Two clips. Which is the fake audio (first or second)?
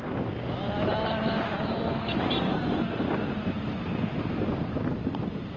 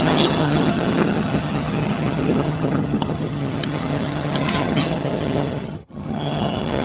second